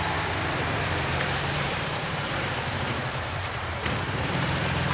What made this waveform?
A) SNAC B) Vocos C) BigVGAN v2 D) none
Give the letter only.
C